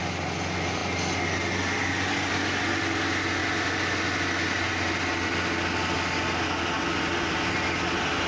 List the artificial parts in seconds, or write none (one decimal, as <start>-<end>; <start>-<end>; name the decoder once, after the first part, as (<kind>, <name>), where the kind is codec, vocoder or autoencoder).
none